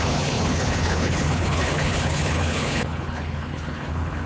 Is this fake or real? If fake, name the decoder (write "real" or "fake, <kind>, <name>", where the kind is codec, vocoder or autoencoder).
fake, codec, HILCodec